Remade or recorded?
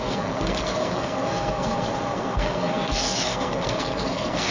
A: remade